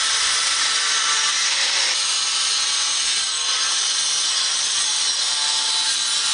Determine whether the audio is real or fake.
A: real